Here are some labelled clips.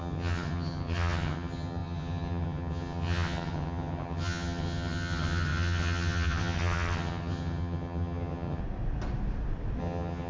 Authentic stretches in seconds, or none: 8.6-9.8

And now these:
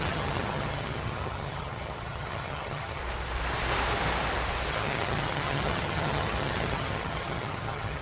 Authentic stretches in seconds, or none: 3.0-4.7

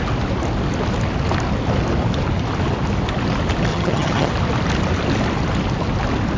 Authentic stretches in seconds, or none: 0.0-3.7; 4.3-6.4